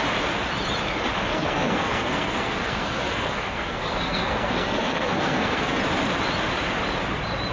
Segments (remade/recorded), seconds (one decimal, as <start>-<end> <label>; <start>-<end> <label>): 0.0-1.3 recorded; 1.3-5.8 remade; 5.8-7.5 recorded